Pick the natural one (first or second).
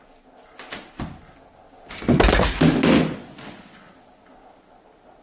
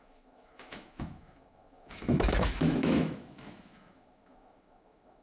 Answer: first